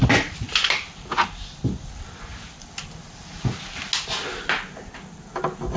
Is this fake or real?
real